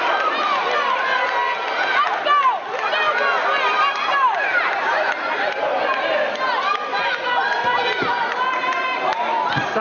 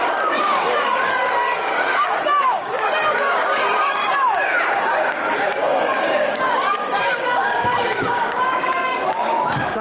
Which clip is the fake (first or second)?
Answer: second